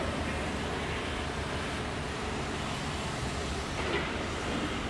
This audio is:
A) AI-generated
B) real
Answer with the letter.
B